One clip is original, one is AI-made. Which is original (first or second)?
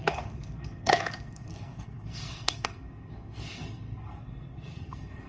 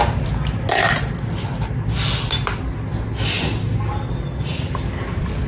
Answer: second